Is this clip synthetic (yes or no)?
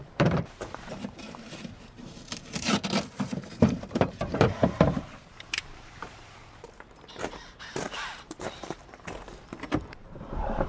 yes